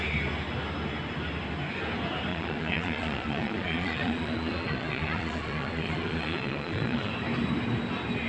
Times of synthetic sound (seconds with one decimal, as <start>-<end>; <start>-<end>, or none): 2.3-7.1